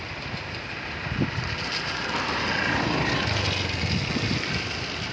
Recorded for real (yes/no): yes